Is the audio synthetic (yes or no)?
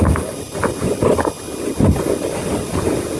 no